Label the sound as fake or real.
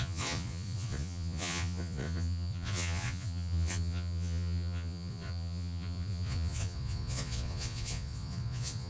fake